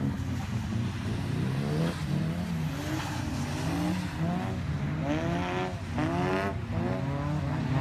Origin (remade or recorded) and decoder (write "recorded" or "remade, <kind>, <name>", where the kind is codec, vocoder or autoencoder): recorded